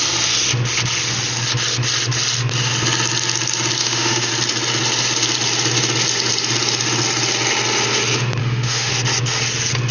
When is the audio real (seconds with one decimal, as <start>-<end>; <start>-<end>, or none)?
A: 0.0-3.8; 4.3-8.4; 8.9-9.9